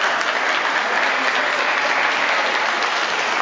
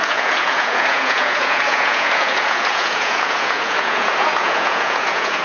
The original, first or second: first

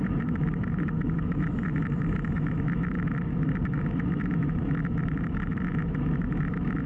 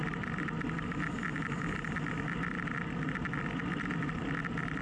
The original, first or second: second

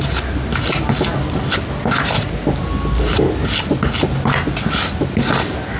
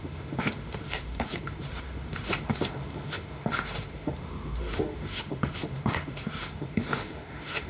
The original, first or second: first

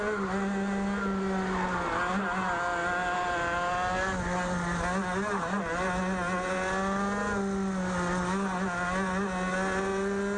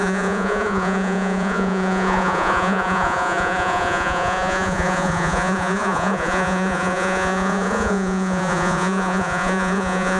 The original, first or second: first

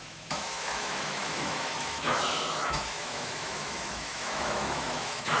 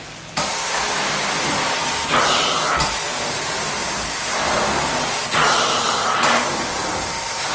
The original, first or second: second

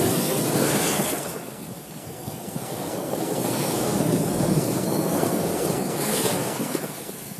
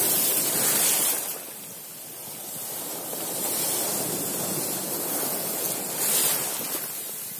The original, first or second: second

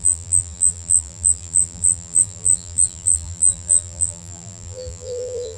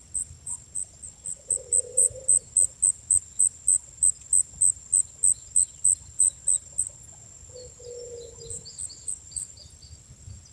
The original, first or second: second